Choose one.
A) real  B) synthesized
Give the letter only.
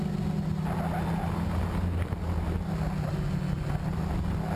A